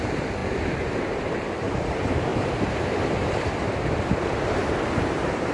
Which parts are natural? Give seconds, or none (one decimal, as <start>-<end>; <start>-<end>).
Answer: none